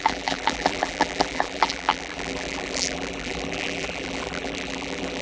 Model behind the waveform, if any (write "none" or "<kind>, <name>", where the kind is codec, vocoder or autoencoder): vocoder, BigVGAN v2